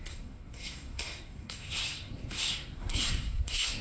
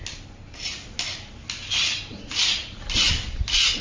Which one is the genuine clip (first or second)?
second